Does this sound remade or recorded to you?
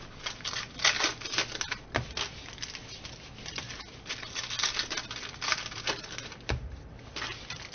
recorded